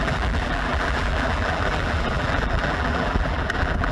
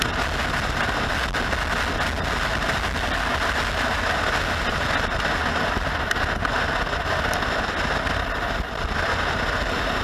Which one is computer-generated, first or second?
first